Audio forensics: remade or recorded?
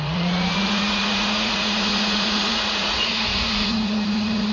remade